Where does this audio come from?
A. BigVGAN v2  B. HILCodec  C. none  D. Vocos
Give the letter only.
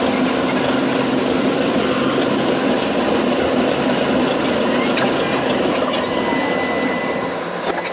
C